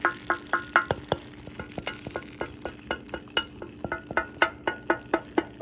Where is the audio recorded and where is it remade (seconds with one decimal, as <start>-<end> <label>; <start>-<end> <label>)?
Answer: 0.0-5.6 recorded